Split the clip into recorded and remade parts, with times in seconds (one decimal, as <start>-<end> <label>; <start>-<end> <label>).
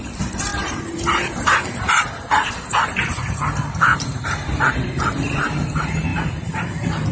0.0-7.1 remade